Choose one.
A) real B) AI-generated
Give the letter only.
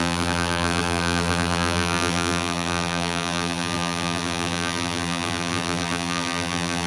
B